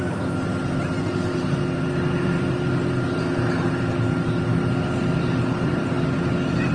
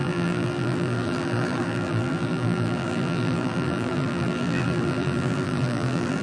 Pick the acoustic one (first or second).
first